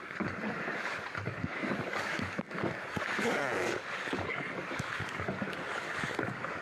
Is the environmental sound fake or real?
fake